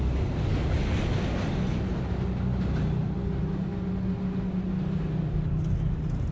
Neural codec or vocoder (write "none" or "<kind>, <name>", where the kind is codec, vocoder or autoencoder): none